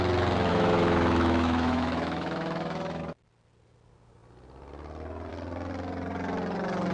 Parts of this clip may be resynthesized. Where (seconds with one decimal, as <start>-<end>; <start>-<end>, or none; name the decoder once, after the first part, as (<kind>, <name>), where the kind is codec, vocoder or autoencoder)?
0.5-3.0 (autoencoder, DAC-VAE)